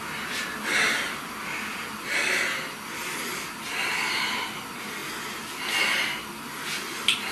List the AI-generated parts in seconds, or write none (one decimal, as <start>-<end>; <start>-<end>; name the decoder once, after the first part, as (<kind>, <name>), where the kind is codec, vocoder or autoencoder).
none